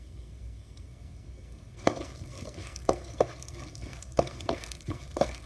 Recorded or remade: remade